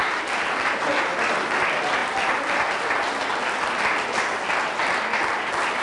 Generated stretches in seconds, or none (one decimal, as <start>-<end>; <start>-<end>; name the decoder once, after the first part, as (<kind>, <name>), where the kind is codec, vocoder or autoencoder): none